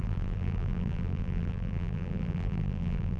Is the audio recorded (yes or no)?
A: no